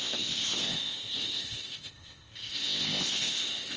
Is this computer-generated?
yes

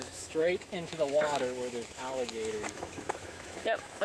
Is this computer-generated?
yes